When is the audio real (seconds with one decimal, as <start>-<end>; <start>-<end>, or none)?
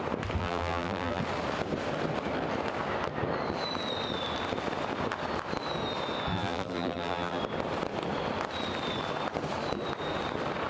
0.0-0.4; 1.2-6.3; 7.4-10.7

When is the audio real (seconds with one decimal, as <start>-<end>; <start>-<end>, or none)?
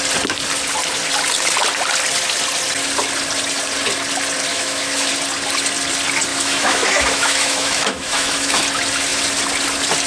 0.0-4.5; 5.1-6.3; 8.6-10.1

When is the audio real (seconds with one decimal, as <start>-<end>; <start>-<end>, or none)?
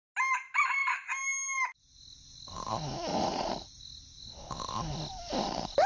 0.0-3.1; 3.8-5.9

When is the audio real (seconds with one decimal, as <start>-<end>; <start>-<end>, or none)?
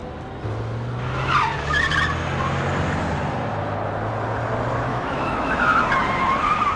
0.0-4.9; 5.8-6.8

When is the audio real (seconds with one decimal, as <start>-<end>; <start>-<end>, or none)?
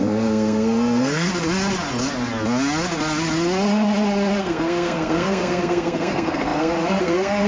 1.3-4.4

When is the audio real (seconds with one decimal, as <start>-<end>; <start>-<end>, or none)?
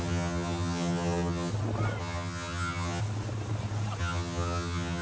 1.5-2.0; 3.0-4.0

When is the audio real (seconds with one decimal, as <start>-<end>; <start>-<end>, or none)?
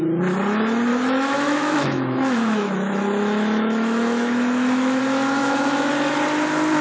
0.0-0.9; 5.0-5.4; 5.9-6.8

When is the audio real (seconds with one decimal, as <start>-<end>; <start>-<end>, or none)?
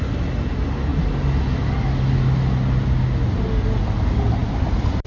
0.0-5.1